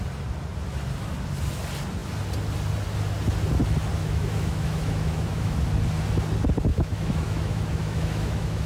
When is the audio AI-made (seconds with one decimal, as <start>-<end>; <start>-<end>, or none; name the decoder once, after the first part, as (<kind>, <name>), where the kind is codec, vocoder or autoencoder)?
4.0-5.6 (autoencoder, DAC-VAE); 6.7-8.7